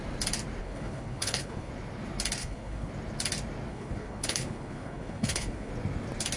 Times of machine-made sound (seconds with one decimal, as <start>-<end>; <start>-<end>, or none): 0.6-1.7; 2.4-2.9; 3.7-5.7